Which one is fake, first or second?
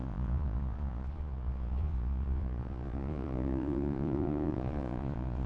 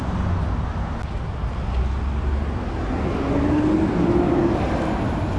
first